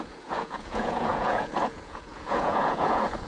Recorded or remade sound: remade